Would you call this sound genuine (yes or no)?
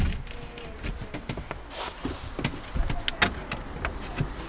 yes